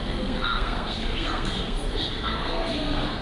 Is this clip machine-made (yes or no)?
yes